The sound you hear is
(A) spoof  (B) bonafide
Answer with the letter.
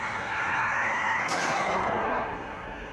A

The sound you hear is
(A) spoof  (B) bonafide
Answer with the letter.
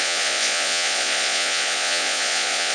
A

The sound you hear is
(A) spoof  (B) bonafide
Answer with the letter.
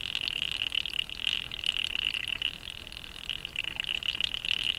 B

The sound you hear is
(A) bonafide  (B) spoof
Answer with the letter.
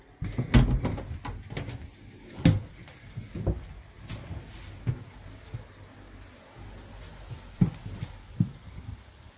A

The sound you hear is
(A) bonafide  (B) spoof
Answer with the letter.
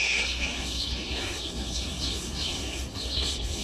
B